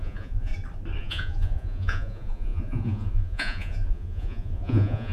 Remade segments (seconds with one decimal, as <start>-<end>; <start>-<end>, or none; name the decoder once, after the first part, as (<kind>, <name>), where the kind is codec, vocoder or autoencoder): 0.0-0.5 (vocoder, Vocos); 1.0-5.1